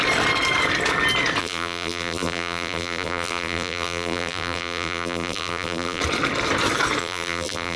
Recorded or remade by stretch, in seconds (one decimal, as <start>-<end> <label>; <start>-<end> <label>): 0.0-1.4 recorded; 1.4-6.0 remade; 6.0-7.0 recorded; 7.0-7.8 remade